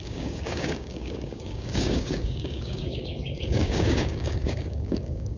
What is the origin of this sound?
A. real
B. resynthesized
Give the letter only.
B